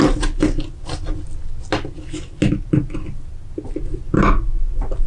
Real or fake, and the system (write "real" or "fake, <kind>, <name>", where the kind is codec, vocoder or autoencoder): real